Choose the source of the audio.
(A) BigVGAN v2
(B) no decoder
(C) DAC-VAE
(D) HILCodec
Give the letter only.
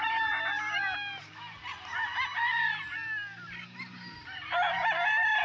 B